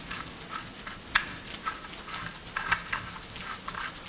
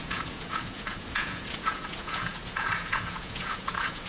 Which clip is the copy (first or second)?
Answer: second